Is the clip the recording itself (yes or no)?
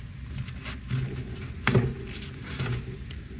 yes